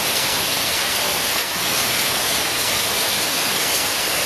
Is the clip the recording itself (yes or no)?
no